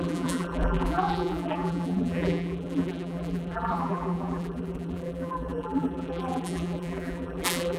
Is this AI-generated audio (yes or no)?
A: yes